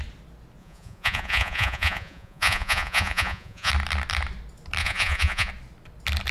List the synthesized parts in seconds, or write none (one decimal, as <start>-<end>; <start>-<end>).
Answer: 0.6-3.7; 4.8-5.5